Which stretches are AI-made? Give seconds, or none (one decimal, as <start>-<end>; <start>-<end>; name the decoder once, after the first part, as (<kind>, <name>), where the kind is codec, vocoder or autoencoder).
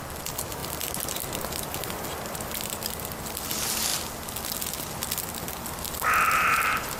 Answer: none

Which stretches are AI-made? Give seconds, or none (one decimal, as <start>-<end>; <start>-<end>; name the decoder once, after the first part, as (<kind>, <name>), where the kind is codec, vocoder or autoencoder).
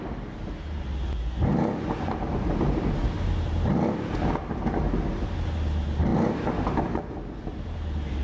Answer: none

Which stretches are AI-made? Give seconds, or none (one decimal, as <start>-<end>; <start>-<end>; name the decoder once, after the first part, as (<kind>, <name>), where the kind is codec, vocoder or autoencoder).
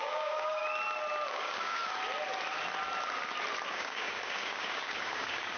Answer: 0.0-0.6 (codec, DAC); 1.3-1.8; 3.7-5.6